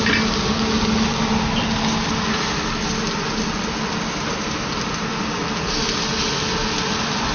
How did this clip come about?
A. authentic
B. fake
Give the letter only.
A